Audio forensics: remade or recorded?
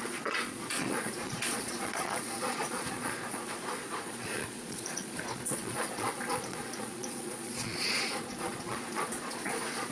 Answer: remade